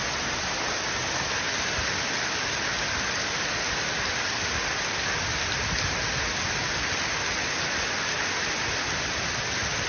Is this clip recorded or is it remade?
recorded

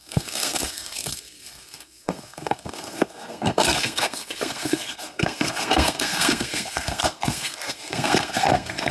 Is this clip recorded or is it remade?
remade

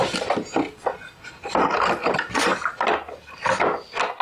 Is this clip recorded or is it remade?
recorded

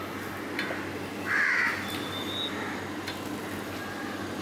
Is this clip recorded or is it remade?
recorded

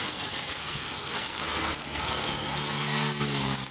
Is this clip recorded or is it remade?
remade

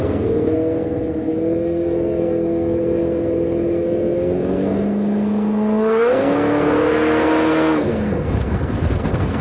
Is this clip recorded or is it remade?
remade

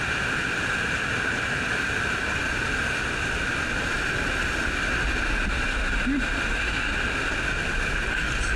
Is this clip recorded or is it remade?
recorded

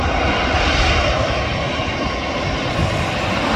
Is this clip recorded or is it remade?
recorded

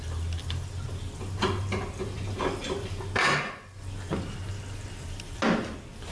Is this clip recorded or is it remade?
recorded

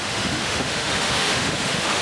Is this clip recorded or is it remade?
remade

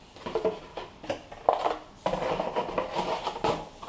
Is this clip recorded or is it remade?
recorded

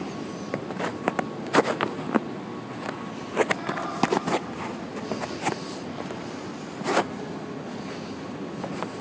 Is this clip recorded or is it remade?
recorded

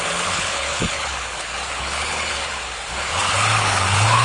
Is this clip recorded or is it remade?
remade